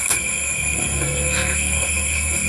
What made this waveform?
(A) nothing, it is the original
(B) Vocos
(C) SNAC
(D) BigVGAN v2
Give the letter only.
C